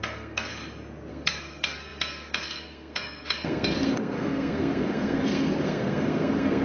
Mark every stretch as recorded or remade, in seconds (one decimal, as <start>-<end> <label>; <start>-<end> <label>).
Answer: 0.0-0.5 remade; 0.5-1.1 recorded; 1.1-6.6 remade